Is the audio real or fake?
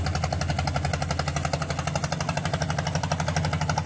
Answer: real